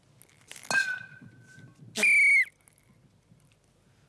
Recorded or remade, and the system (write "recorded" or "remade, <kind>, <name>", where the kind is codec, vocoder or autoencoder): recorded